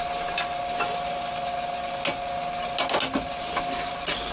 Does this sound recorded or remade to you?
recorded